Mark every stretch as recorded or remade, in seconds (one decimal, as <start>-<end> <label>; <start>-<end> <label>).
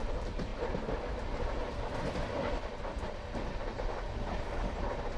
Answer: 0.0-5.2 recorded